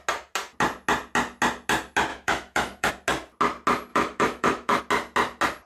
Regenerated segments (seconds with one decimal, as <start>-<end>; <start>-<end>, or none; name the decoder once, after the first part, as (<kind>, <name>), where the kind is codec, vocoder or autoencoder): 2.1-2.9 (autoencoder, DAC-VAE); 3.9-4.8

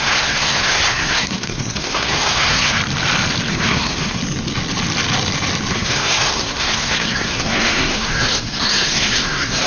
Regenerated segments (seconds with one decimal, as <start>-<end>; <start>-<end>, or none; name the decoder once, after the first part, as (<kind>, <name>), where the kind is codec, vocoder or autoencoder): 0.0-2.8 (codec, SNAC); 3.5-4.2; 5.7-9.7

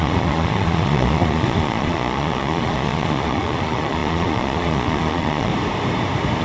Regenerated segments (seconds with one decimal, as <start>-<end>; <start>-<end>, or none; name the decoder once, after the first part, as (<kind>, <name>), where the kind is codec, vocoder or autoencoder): 0.0-5.5 (vocoder, Vocos)

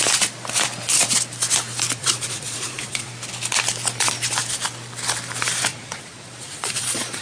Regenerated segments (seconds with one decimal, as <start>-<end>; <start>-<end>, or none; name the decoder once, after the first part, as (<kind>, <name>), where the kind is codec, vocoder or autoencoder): 2.0-3.1 (vocoder, Vocos); 5.7-7.2

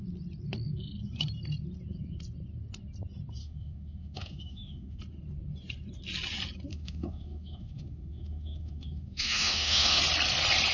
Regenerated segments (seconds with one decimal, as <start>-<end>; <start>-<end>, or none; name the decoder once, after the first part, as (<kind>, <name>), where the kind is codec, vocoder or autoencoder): 3.4-5.0 (autoencoder, DAC-VAE); 6.7-10.0